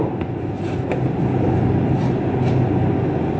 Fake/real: real